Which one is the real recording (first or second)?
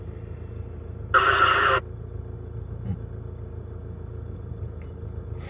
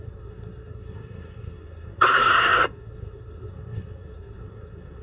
first